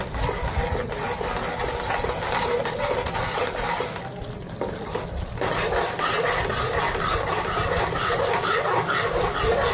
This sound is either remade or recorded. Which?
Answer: recorded